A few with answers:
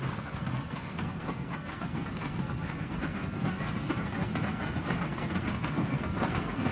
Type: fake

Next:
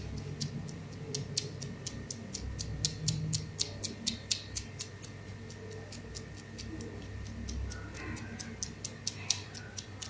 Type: real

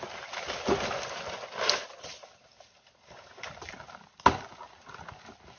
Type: real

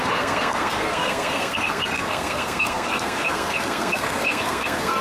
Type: fake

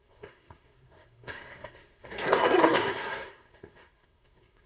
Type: fake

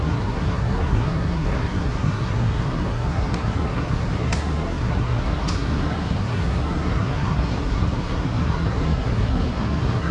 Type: fake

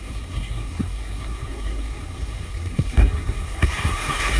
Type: fake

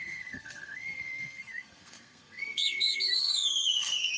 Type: fake